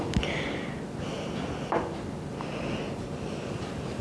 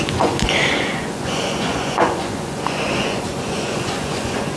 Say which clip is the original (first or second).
first